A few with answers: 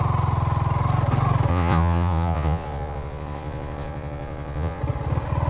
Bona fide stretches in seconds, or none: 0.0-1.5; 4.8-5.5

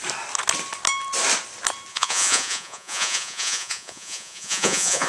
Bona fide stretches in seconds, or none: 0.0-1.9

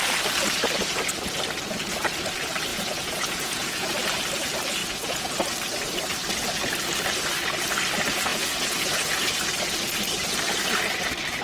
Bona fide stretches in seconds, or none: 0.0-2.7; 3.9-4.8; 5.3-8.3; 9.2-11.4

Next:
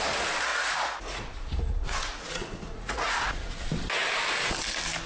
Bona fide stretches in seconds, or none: 0.0-0.5; 3.6-5.1